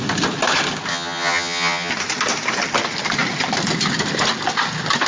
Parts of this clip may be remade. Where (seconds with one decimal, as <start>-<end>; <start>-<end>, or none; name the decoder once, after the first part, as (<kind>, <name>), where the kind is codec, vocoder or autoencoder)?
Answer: 0.9-1.9 (vocoder, HiFi-GAN)